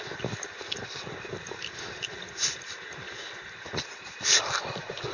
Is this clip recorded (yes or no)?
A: yes